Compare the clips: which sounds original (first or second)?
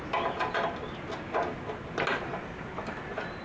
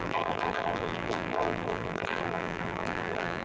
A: first